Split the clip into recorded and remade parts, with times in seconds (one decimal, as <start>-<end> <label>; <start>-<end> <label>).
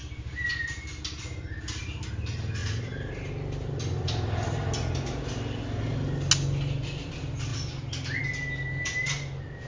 0.0-2.6 recorded; 2.6-3.3 remade; 3.3-9.7 recorded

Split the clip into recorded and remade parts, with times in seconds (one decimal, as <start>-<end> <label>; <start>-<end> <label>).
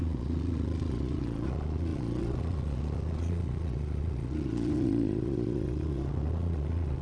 0.0-7.0 remade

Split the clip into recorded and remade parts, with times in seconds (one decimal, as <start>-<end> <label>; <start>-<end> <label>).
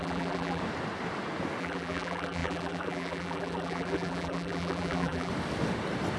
0.0-0.6 remade; 0.6-1.6 recorded; 1.6-5.3 remade; 5.3-6.2 recorded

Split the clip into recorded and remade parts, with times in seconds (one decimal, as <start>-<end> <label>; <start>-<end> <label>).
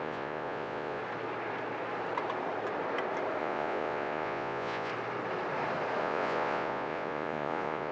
0.0-1.0 remade; 1.0-3.4 recorded; 3.4-4.9 remade; 4.9-6.0 recorded; 6.0-7.9 remade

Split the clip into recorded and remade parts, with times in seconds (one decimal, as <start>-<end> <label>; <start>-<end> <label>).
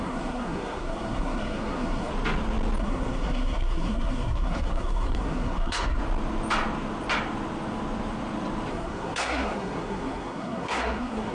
0.0-2.1 remade; 2.1-2.8 recorded; 2.8-6.0 remade; 6.0-8.7 recorded; 8.7-11.3 remade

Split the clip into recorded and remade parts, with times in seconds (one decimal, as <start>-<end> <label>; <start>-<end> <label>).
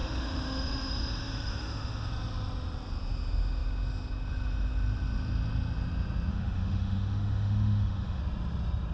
0.0-2.1 remade; 2.1-6.3 recorded; 6.3-8.2 remade; 8.2-8.9 recorded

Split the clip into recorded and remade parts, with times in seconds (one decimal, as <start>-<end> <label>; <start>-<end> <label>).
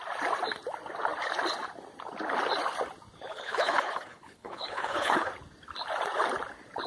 0.0-3.3 recorded; 3.3-5.3 remade; 5.3-6.9 recorded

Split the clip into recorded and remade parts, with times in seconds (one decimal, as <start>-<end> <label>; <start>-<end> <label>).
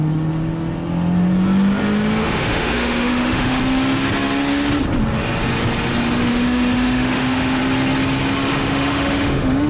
0.0-2.2 recorded; 2.2-3.6 remade; 3.6-6.3 recorded; 6.3-7.6 remade; 7.6-8.5 recorded; 8.5-9.7 remade